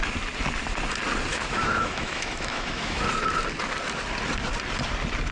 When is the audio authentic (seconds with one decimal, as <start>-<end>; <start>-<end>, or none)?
0.0-1.3; 3.0-5.3